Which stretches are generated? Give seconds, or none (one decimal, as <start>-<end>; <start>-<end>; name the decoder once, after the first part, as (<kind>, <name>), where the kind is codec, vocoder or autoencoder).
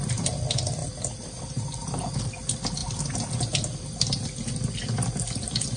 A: 0.8-1.9 (vocoder, BigVGAN v2); 2.8-5.8